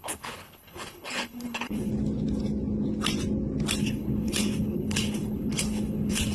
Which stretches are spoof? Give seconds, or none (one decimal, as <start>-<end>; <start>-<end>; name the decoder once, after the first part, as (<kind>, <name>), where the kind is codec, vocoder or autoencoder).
0.0-1.9 (codec, HILCodec); 3.8-6.3